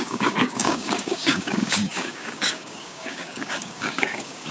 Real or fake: fake